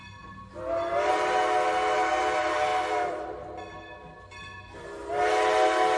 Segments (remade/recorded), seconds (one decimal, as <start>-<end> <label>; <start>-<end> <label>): 0.0-6.0 recorded